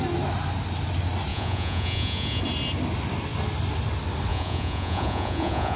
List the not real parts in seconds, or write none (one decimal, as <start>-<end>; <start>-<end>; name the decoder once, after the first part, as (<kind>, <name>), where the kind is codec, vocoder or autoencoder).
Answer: 1.3-2.4 (vocoder, Vocos); 4.3-5.8